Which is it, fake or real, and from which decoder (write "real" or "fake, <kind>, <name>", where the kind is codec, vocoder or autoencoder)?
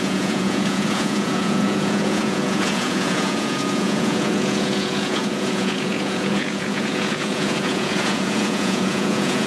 fake, vocoder, Vocos